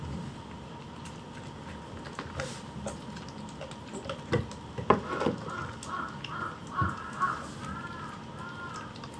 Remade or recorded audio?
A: recorded